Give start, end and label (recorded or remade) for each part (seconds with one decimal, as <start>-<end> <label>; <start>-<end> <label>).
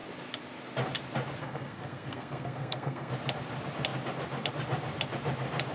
0.0-1.4 recorded; 1.4-3.1 remade; 3.1-5.7 recorded